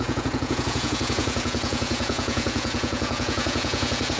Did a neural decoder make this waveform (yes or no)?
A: yes